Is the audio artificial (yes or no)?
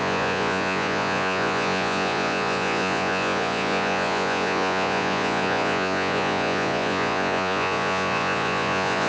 yes